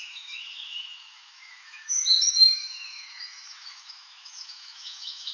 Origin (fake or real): fake